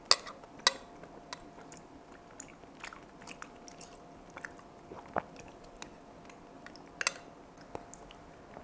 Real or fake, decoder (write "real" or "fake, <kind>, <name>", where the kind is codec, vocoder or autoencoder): real